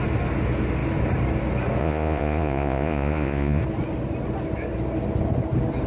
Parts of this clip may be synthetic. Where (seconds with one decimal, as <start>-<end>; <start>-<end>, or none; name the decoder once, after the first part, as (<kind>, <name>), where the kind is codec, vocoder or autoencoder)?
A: 1.8-3.6 (vocoder, Vocos)

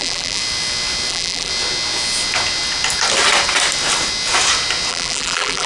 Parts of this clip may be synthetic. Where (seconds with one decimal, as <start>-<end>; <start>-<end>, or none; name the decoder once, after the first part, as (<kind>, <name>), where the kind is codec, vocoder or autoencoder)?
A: 0.0-0.4 (vocoder, BigVGAN v2); 1.1-1.5; 4.9-5.7

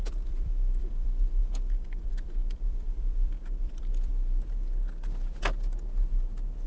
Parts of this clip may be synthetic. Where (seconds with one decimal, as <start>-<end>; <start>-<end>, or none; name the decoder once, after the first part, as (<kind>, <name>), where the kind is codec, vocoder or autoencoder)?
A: 0.0-4.1 (vocoder, BigVGAN v2)

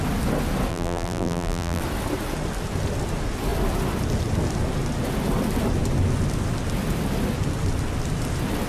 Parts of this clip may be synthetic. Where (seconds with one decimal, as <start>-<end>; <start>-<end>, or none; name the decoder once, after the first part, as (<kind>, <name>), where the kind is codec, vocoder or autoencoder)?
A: 0.7-1.8 (vocoder, BigVGAN v2)

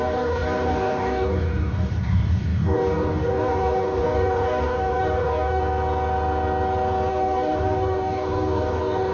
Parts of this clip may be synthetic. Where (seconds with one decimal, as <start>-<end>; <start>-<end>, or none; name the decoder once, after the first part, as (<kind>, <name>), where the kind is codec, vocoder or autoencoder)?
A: 0.0-5.6 (codec, DAC); 7.1-9.1

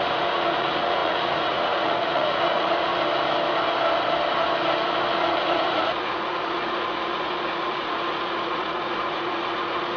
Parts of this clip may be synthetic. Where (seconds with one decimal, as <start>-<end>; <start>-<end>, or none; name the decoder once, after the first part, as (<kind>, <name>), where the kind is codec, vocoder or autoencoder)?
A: 0.0-2.9 (vocoder, Vocos); 5.1-10.0

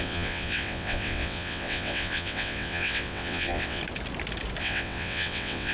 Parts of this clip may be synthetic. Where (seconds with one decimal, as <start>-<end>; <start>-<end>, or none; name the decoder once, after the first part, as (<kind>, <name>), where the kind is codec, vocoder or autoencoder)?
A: 0.0-3.8 (vocoder, WaveNeXt); 4.6-5.7

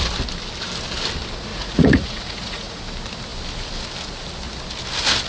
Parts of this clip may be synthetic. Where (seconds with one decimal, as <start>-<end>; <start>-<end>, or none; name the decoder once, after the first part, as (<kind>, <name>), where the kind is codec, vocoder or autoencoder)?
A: 1.5-2.8 (vocoder, Vocos)